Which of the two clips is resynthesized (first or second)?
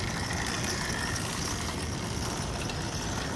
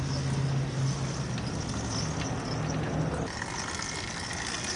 first